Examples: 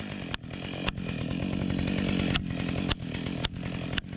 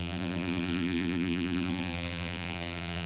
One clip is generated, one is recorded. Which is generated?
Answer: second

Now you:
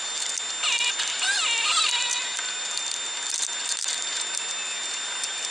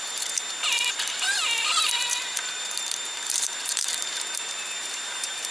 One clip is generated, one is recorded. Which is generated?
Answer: second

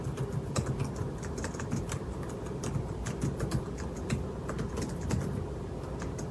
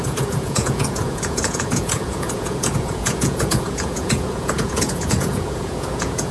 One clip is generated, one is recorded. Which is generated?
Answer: second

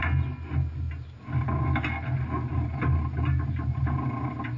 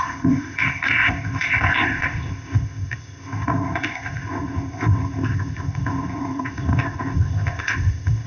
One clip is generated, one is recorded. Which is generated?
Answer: second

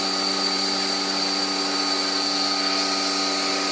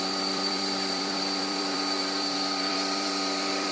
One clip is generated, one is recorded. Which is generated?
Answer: second